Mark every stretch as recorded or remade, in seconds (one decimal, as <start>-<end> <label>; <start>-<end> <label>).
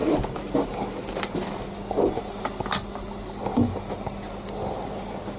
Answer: 0.0-5.4 recorded